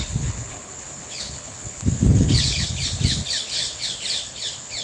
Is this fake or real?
fake